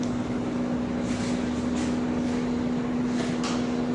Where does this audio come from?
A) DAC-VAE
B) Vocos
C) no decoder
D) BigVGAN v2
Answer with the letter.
C